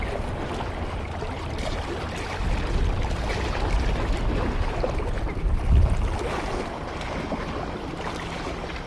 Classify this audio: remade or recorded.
recorded